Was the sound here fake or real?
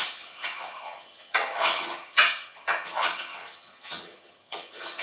fake